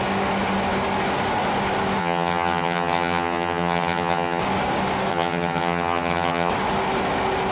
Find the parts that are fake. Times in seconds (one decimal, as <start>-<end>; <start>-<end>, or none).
2.0-4.4; 5.1-6.5